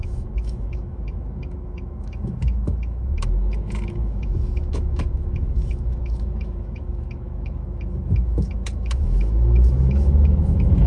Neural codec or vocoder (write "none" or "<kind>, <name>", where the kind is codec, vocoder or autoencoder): autoencoder, DAC-VAE